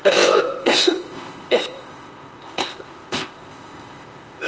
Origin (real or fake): fake